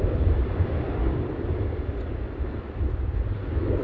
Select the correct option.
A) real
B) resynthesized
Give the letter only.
A